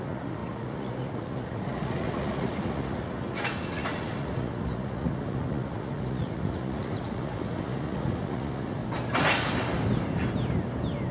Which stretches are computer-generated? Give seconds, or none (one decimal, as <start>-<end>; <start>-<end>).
0.0-8.8